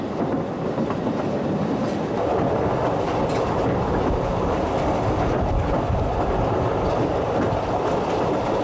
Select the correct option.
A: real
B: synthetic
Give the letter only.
A